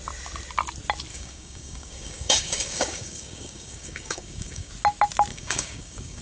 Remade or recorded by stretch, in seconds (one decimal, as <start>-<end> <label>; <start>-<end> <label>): 0.0-1.1 recorded; 1.1-4.7 remade; 4.7-5.3 recorded; 5.3-6.2 remade